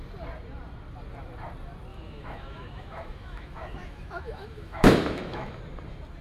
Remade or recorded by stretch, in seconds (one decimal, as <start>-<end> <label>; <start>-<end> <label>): 0.0-1.9 recorded; 1.9-5.6 remade; 5.6-6.2 recorded